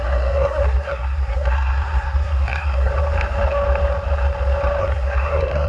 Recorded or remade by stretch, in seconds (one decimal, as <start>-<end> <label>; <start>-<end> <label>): 0.0-2.9 remade; 2.9-4.8 recorded; 4.8-5.7 remade